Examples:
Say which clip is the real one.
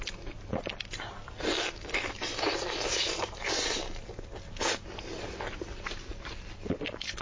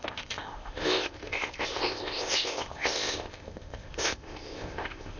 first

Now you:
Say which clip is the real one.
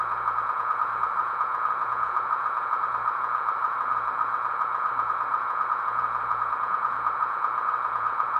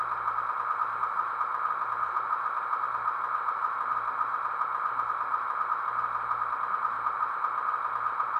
second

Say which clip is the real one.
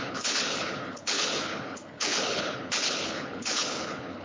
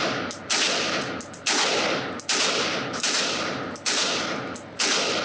second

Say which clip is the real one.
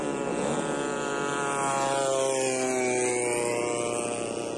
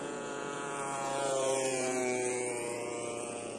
first